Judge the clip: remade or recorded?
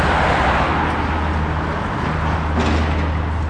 recorded